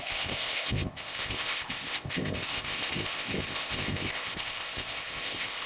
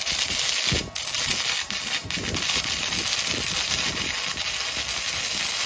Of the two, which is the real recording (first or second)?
second